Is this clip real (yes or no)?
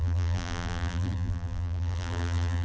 no